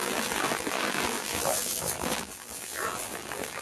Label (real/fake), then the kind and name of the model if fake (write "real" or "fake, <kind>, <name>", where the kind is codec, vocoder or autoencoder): fake, vocoder, BigVGAN v2